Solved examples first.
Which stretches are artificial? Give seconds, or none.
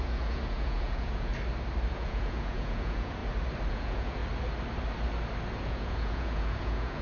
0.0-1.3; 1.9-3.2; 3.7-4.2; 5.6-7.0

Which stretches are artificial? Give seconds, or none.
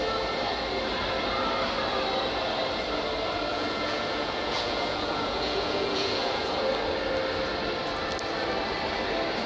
3.5-6.6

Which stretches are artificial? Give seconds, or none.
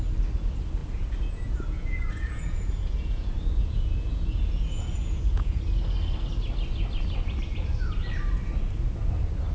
0.8-5.6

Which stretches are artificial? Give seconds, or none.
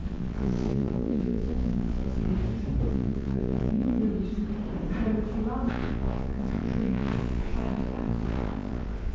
0.0-2.3; 2.9-4.0; 5.7-9.1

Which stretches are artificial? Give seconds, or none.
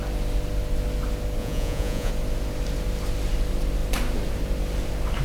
1.4-2.1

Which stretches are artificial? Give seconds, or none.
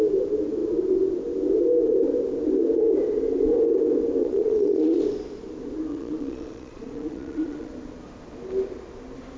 4.2-5.0; 5.9-7.7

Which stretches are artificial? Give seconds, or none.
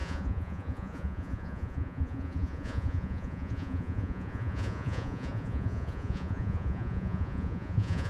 0.0-8.1